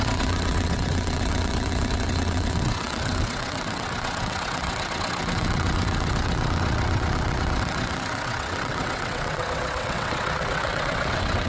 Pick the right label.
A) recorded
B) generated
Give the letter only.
B